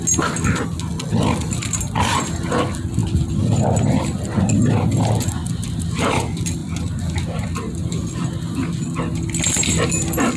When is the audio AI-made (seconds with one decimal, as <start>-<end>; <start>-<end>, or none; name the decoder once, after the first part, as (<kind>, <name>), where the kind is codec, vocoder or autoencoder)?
none